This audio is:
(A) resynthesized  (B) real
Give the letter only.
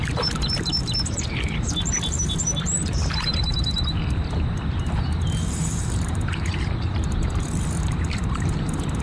A